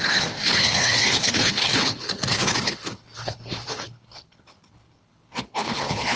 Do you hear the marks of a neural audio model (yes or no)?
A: yes